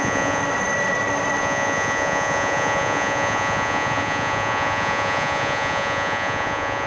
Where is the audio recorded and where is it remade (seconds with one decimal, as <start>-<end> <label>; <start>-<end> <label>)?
0.0-0.4 remade; 0.4-1.4 recorded; 1.4-6.9 remade